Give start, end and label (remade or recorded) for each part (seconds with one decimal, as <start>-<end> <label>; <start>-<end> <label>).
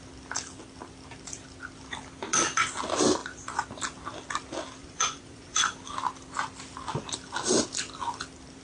0.0-4.8 recorded; 4.8-5.7 remade; 5.7-8.6 recorded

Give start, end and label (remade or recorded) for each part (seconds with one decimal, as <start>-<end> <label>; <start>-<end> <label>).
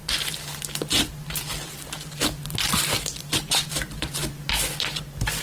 0.0-3.2 recorded; 3.2-4.2 remade; 4.2-5.4 recorded